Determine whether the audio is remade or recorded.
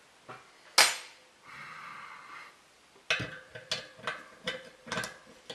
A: recorded